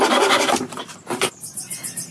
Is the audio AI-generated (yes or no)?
no